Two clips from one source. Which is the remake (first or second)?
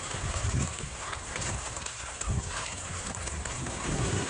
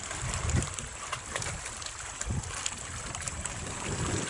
first